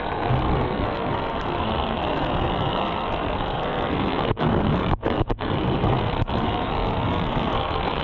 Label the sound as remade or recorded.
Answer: remade